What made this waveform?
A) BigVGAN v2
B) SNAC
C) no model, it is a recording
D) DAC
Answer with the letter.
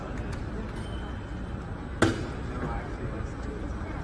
C